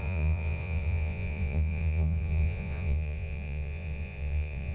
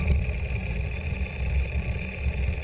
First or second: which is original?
second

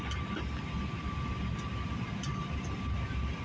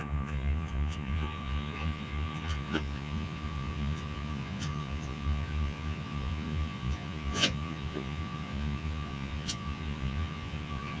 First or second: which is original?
first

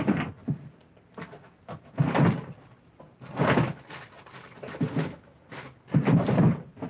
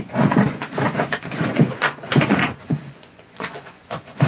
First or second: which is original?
first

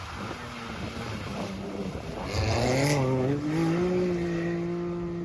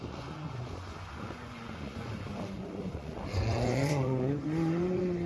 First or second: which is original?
first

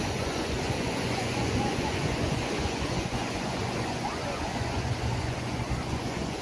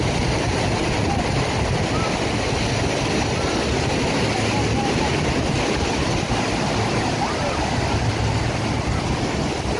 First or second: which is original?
second